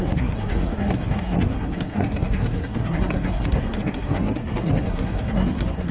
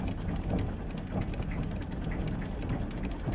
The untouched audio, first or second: second